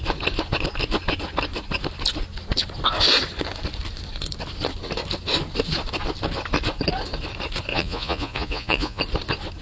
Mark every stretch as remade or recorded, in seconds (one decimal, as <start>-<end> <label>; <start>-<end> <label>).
0.0-7.7 recorded; 7.7-9.0 remade; 9.0-9.6 recorded